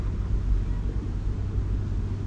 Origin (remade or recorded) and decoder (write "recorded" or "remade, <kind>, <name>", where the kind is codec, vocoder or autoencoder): recorded